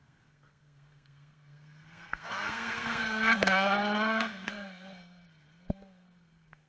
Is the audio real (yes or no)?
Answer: no